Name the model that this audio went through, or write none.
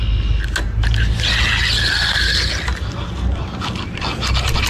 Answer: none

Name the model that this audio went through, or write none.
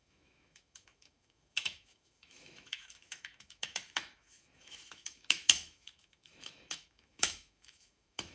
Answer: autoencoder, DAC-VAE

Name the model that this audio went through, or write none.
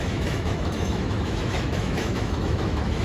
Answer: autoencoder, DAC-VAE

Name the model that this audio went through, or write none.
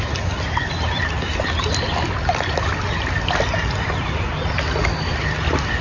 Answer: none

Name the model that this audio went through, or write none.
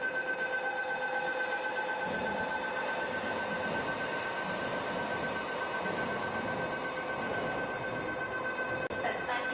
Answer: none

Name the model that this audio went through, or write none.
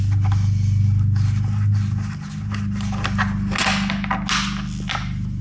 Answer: none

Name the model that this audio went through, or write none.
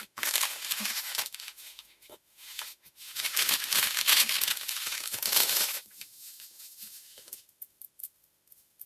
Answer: autoencoder, DAC-VAE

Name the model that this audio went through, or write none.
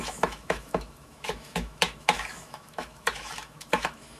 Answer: autoencoder, DAC-VAE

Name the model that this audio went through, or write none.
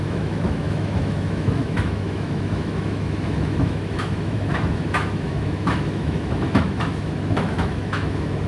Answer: autoencoder, DAC-VAE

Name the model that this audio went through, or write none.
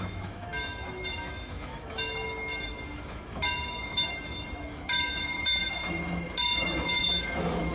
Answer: autoencoder, DAC-VAE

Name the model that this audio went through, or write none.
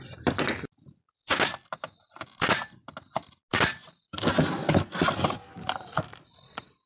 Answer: none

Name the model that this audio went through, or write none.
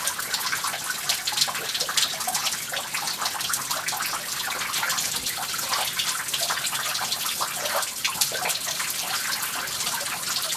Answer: none